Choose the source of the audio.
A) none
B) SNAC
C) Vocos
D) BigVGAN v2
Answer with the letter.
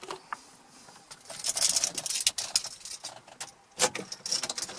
A